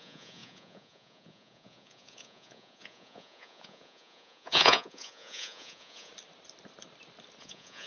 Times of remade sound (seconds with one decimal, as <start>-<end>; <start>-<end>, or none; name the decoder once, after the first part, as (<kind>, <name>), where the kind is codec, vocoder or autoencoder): 0.0-6.1 (vocoder, Vocos); 7.4-7.9